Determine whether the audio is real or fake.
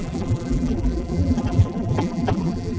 fake